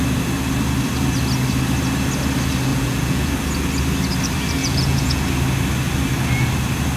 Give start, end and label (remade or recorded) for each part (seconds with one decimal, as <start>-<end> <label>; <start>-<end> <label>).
0.0-2.7 recorded; 2.7-3.3 remade; 3.3-4.6 recorded; 4.6-5.2 remade; 5.2-7.0 recorded